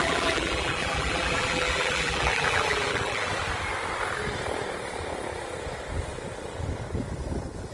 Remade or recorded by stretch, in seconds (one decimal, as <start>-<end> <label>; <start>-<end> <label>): 0.0-3.3 remade; 3.3-7.7 recorded